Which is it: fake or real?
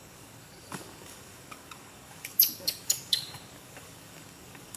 fake